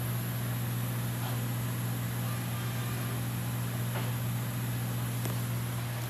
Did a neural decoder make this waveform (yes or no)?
no